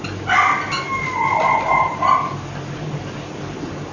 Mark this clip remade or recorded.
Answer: recorded